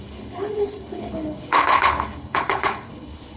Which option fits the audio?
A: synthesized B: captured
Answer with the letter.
A